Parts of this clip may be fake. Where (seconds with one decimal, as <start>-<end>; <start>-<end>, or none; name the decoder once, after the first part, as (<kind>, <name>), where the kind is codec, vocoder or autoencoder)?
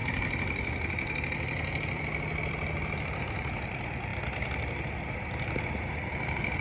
none